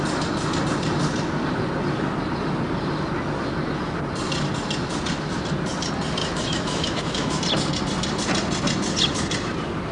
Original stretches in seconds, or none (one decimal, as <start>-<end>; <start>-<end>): 0.0-6.2; 7.4-9.9